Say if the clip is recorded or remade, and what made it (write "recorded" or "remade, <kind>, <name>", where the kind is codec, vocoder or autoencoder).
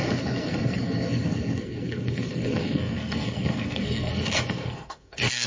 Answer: remade, codec, SNAC